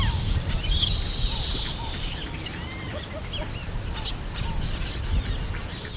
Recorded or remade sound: recorded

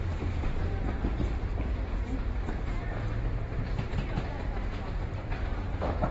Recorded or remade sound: remade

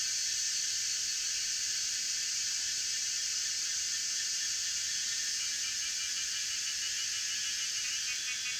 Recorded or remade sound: recorded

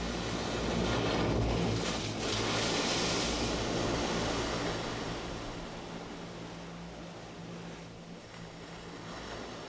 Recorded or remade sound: recorded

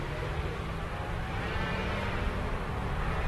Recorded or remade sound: remade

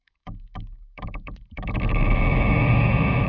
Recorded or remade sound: remade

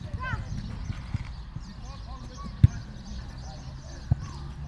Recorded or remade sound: recorded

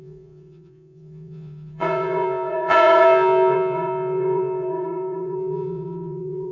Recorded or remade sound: remade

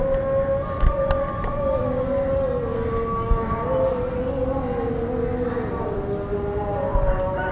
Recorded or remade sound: recorded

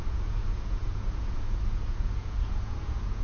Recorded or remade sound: remade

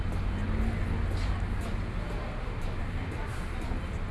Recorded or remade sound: recorded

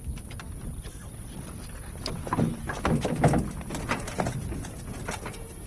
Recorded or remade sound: recorded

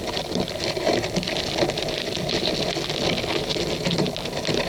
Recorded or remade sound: recorded